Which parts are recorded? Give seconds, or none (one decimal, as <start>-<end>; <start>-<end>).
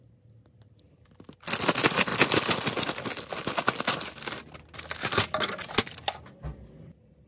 0.0-7.3